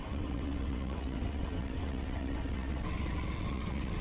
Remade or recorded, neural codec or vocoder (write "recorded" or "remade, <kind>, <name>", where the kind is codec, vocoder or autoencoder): remade, vocoder, WaveNeXt